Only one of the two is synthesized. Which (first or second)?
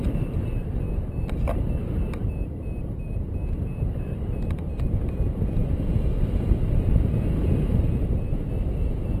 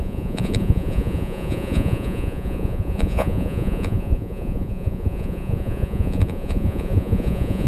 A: second